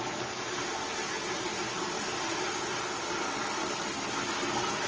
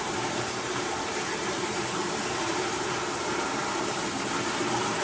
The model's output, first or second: second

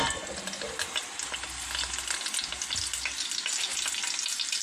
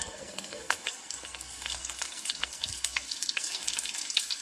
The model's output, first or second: second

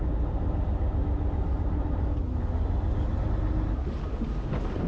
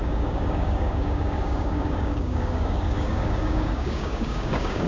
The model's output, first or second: second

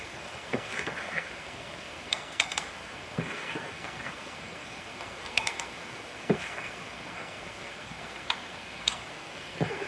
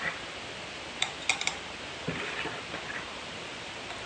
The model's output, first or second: first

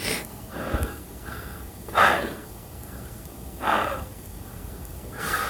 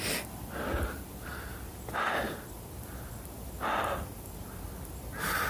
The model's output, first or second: first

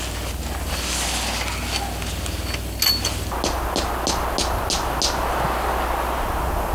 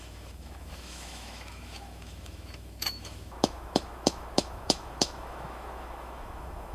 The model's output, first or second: second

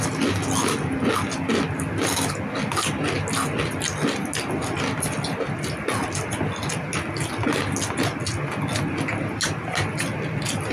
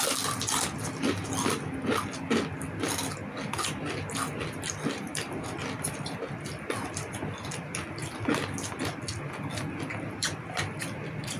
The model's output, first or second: second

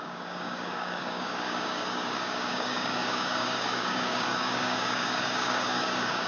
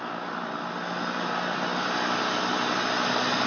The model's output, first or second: first